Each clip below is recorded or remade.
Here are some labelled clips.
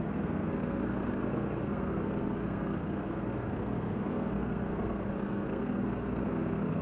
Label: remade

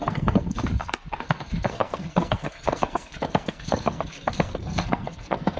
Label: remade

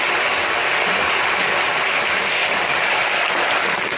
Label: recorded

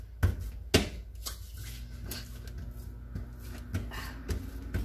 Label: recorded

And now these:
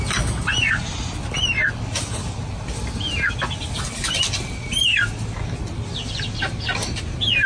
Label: recorded